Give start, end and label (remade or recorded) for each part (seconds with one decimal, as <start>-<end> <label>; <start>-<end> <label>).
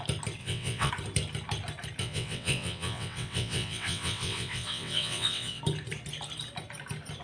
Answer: 0.0-0.4 recorded; 0.4-0.9 remade; 0.9-2.0 recorded; 2.0-5.6 remade; 5.6-7.2 recorded